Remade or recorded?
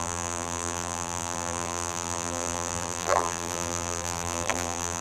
remade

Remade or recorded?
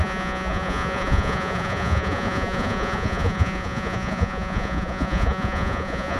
remade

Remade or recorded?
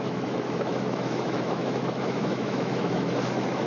remade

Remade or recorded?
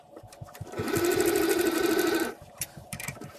remade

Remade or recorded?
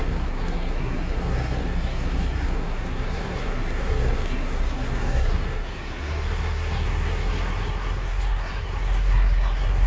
remade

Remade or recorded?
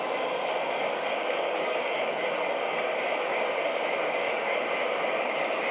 remade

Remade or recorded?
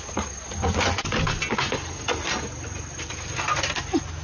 recorded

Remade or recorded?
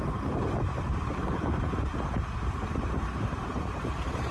remade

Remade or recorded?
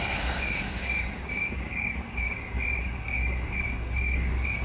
remade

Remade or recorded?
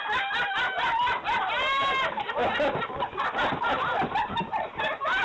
recorded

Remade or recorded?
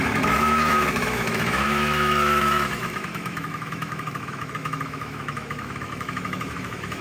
remade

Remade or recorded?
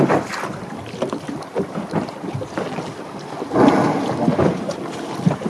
recorded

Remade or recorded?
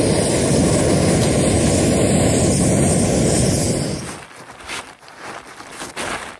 recorded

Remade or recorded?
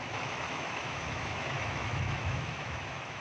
remade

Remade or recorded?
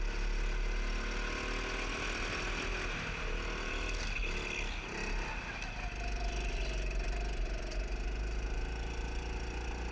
recorded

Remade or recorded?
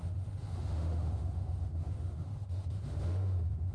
remade